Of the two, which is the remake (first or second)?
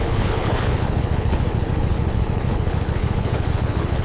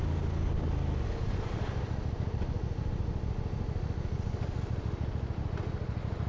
first